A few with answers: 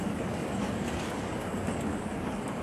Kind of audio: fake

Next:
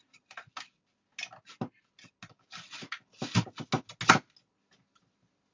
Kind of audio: real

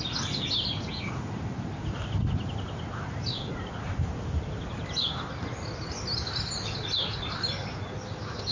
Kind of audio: real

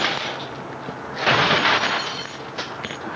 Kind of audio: real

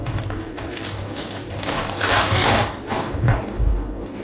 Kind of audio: fake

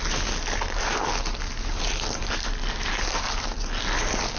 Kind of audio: real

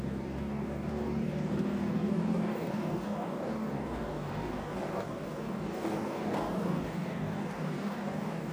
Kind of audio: fake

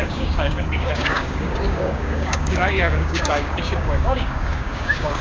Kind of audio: fake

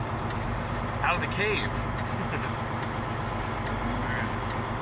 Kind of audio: real